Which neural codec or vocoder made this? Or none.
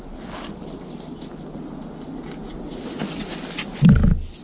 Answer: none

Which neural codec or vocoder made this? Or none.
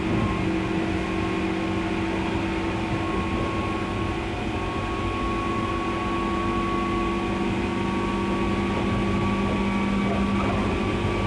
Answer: none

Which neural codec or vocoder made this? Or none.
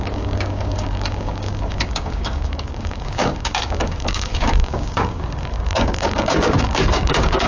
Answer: codec, DAC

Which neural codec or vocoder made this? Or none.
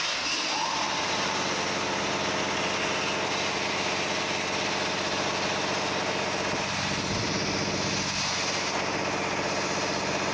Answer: none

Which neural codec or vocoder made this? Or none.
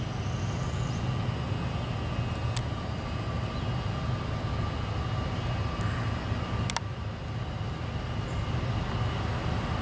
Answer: none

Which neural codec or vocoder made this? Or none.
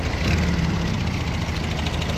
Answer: none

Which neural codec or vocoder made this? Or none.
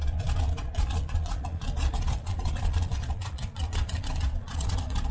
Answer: vocoder, Vocos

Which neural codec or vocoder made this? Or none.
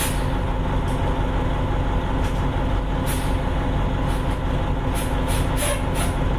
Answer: none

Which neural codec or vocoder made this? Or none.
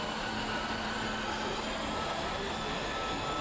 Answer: none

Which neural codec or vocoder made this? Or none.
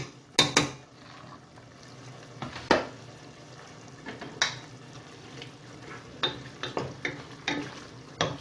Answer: none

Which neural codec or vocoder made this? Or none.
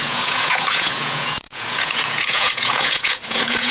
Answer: vocoder, Vocos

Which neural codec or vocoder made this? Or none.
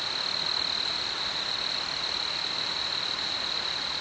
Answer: none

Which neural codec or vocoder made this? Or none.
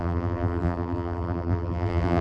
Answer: vocoder, BigVGAN v2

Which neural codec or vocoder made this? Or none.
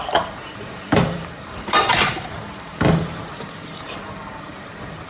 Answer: vocoder, BigVGAN v2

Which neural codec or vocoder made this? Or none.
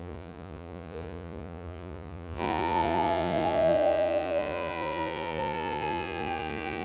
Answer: vocoder, Vocos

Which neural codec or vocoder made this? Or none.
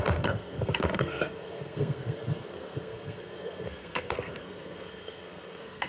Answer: codec, SNAC